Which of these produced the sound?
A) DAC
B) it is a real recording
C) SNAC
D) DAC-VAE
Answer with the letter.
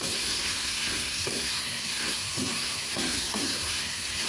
C